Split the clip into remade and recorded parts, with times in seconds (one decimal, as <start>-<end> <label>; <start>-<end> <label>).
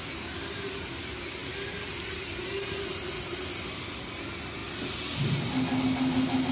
0.0-6.5 recorded